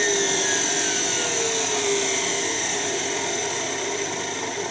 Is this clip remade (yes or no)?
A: no